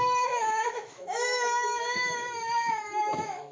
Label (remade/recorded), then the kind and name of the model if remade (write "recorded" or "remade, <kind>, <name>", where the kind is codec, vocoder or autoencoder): remade, autoencoder, DAC-VAE